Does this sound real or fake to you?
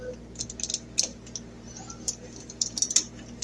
real